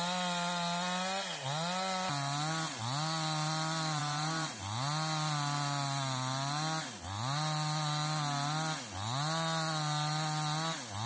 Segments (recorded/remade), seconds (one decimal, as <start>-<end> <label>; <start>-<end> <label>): 0.0-4.0 recorded; 4.0-4.5 remade; 4.5-11.1 recorded